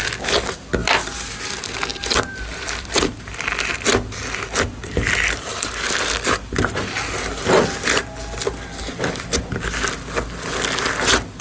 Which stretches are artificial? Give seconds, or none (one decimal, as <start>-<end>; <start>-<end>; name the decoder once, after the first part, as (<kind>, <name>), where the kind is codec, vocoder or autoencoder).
1.9-3.5 (vocoder, BigVGAN v2)